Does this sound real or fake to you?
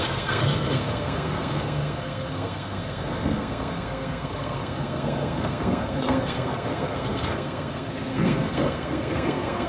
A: fake